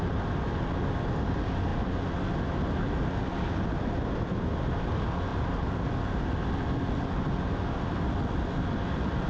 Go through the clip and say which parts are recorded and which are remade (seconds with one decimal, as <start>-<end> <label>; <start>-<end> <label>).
0.0-9.3 recorded

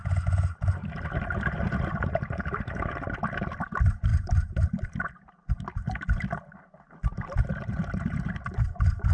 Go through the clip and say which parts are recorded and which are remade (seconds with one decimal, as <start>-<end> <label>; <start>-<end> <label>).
0.0-4.1 recorded; 4.1-5.6 remade; 5.6-9.1 recorded

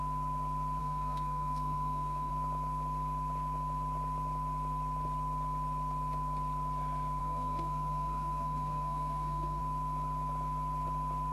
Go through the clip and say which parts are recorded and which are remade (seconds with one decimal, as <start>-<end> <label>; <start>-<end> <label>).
0.0-0.8 recorded; 0.8-2.3 remade; 2.3-7.2 recorded; 7.2-9.6 remade; 9.6-11.3 recorded

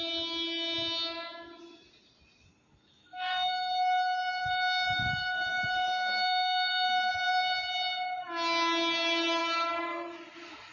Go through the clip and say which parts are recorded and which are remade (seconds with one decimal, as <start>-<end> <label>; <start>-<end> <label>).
0.0-2.5 recorded; 2.5-7.1 remade; 7.1-10.7 recorded

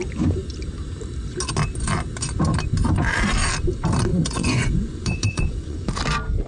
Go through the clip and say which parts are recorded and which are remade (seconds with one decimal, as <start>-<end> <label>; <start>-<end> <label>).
0.0-4.1 recorded; 4.1-5.9 remade; 5.9-6.5 recorded

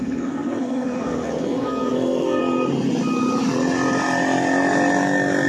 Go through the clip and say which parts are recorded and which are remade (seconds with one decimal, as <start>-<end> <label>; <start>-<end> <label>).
0.0-2.4 remade; 2.4-5.5 recorded

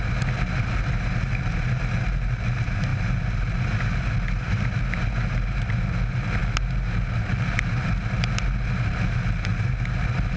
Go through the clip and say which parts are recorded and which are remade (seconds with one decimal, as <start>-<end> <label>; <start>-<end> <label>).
0.0-10.4 recorded